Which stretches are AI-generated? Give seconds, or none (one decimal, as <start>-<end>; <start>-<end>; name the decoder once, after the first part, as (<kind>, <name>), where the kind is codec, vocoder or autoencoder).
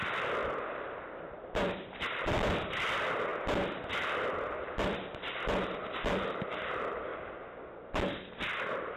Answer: 0.0-3.3 (vocoder, BigVGAN v2); 3.9-7.1